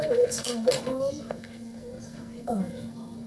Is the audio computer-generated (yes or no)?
yes